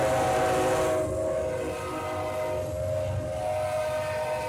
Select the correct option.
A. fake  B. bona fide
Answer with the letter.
B